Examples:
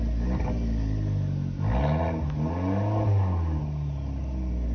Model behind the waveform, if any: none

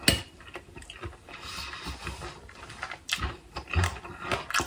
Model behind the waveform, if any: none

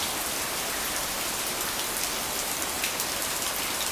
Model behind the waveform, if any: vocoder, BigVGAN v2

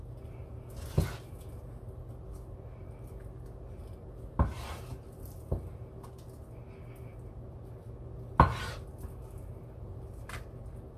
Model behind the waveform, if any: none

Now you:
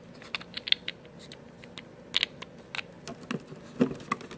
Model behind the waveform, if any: none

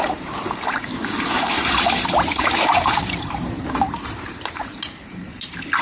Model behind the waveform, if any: vocoder, BigVGAN v2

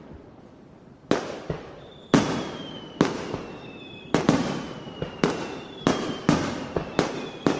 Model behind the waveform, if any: vocoder, BigVGAN v2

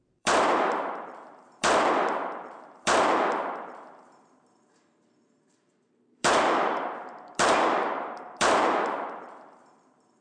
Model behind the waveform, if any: vocoder, BigVGAN v2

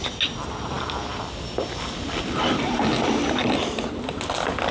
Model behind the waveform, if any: none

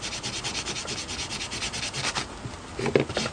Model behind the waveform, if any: none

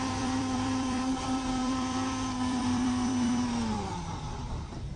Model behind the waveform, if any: vocoder, BigVGAN v2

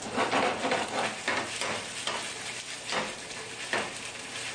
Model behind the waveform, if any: none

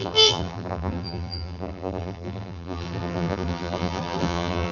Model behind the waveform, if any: vocoder, BigVGAN v2